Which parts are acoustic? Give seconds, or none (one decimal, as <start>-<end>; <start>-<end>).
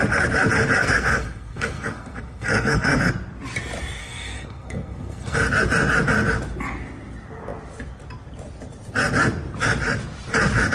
0.0-0.8; 3.1-4.0; 5.4-10.7